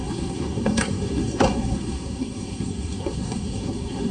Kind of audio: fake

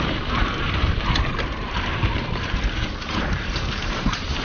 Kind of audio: fake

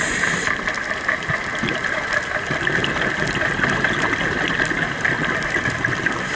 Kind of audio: real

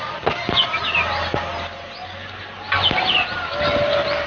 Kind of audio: real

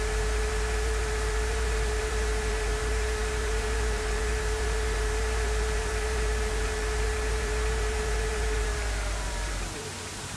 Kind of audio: fake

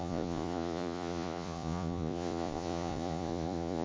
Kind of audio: fake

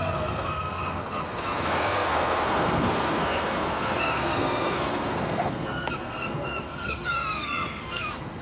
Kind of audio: fake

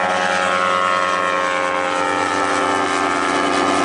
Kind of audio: real